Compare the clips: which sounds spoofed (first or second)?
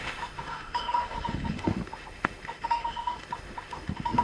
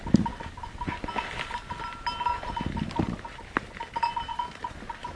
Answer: first